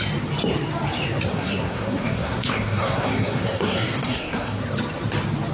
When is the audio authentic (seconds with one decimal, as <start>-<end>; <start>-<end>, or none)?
0.0-1.3; 4.6-5.5